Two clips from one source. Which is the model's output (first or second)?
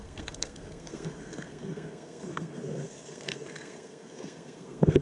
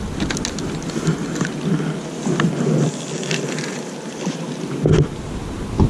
first